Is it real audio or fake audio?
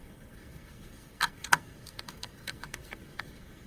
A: fake